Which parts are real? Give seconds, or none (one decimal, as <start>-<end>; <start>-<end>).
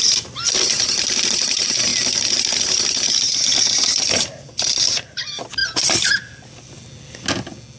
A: 0.0-7.8